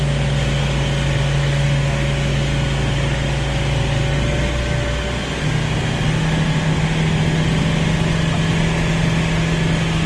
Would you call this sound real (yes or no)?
yes